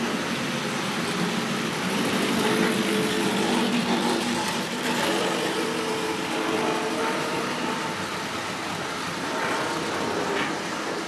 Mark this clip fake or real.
real